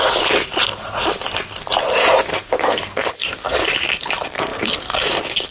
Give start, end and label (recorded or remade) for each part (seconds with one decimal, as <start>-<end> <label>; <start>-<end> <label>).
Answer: 0.0-2.3 recorded; 2.3-3.1 remade; 3.1-5.5 recorded